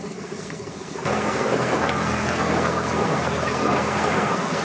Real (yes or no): no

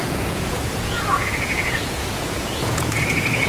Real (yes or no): no